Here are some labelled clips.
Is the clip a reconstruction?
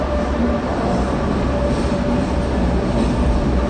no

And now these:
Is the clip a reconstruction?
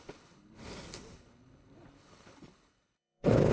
yes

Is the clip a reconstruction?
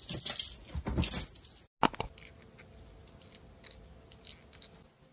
no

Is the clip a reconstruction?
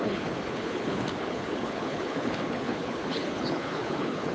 yes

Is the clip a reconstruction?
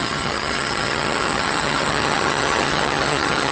yes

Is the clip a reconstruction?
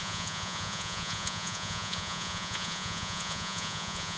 yes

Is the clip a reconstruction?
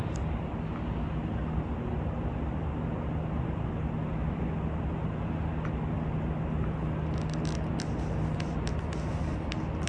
no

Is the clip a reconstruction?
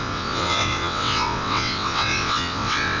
yes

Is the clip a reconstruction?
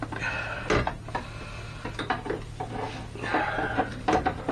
no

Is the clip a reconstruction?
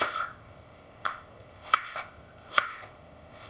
yes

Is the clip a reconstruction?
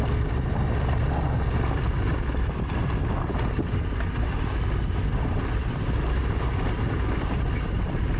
no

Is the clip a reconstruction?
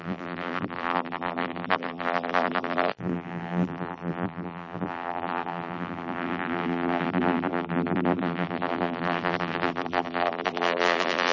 yes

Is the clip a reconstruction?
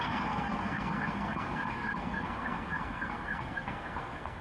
yes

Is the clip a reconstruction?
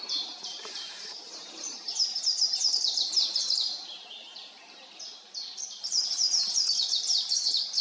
yes